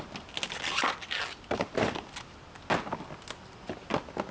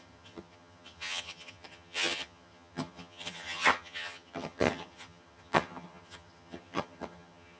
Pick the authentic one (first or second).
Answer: first